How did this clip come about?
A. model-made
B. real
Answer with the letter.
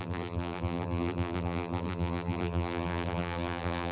A